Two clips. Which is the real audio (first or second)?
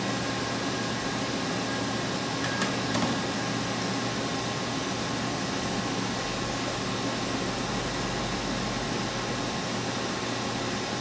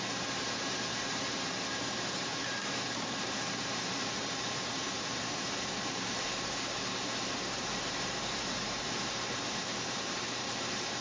first